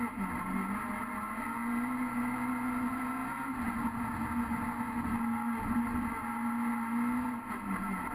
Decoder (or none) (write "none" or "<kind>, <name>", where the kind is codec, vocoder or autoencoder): none